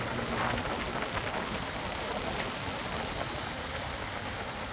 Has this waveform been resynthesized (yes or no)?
no